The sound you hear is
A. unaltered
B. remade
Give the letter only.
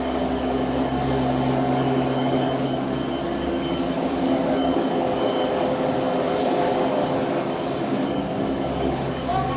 B